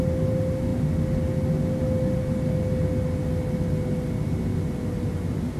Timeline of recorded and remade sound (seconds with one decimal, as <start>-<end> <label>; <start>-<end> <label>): 0.0-5.6 recorded